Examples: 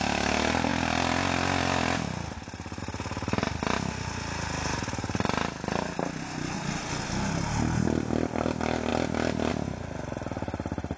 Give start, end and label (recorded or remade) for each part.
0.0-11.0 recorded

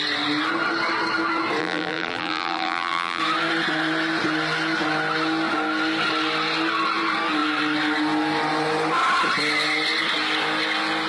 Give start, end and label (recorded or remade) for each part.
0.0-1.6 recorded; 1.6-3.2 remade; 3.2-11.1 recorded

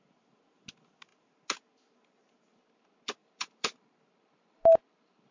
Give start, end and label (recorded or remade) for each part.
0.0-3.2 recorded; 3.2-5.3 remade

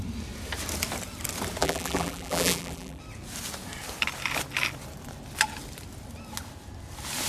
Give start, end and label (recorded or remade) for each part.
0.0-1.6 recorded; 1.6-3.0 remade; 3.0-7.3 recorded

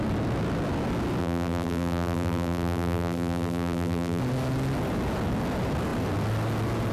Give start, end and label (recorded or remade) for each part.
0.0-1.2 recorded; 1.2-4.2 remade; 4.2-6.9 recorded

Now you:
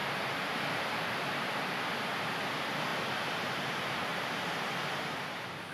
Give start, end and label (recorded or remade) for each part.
0.0-4.1 recorded; 4.1-5.2 remade; 5.2-5.7 recorded